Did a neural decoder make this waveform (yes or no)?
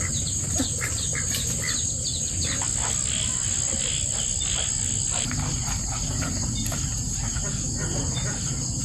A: no